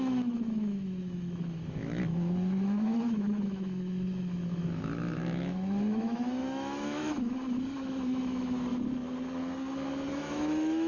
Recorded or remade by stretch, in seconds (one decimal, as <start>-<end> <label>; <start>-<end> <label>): 0.0-8.7 remade; 8.7-10.1 recorded; 10.1-10.9 remade

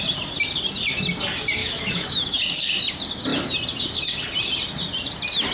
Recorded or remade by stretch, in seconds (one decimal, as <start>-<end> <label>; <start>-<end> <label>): 0.0-1.6 recorded; 1.6-2.4 remade; 2.4-5.5 recorded

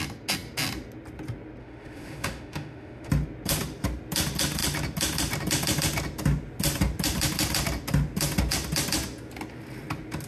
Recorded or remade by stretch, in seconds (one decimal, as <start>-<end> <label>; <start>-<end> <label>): 0.0-1.6 recorded; 1.6-3.1 remade; 3.1-10.3 recorded